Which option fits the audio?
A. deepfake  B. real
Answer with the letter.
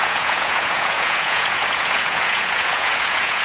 A